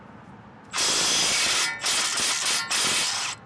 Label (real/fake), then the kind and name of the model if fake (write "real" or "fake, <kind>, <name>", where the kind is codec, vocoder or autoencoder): real